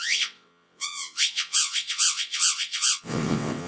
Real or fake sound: fake